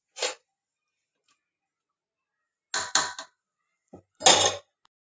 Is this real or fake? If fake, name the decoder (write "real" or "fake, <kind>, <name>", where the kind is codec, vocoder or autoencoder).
real